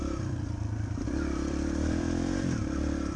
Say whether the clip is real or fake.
fake